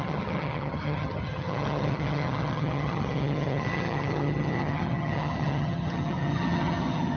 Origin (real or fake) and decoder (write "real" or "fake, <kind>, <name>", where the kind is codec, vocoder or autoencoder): fake, vocoder, HiFi-GAN